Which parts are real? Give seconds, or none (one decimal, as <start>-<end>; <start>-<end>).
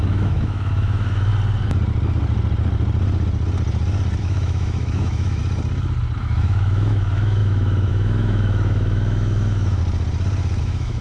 1.3-4.2; 5.4-6.2; 9.8-10.6